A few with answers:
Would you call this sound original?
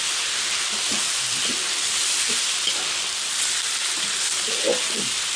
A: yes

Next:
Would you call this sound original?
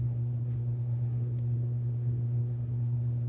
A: no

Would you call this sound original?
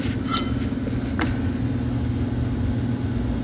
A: yes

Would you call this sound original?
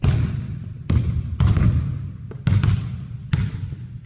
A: yes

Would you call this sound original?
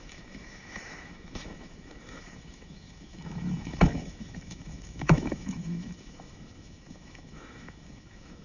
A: no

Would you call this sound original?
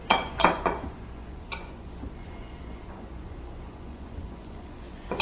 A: no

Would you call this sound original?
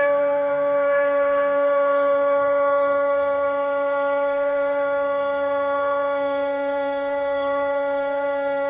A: no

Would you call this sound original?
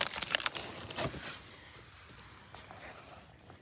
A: yes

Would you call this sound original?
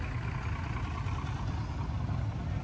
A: yes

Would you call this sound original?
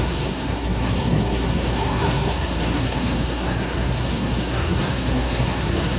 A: no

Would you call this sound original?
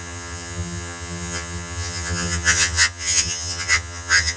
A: no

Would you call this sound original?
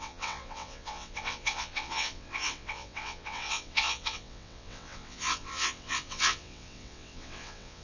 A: no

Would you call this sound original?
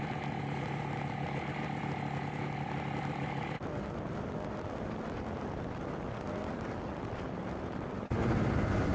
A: yes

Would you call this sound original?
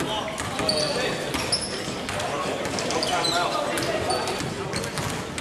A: yes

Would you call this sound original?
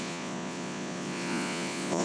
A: no